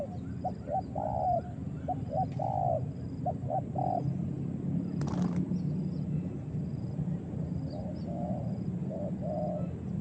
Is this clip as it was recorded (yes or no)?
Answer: yes